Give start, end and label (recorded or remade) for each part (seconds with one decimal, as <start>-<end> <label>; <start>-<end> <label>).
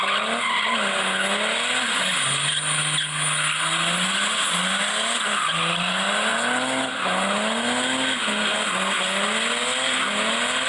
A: 0.0-10.7 recorded